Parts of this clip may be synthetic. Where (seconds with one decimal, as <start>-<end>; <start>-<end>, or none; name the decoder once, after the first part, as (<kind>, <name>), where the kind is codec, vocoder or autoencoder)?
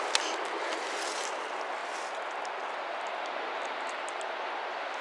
none